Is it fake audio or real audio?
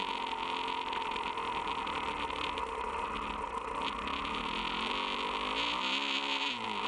real